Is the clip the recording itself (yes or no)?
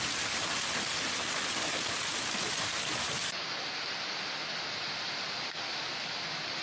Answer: yes